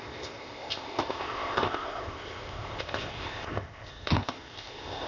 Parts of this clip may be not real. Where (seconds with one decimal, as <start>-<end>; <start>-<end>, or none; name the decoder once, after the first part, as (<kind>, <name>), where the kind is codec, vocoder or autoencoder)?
0.0-5.1 (codec, ZipCodec)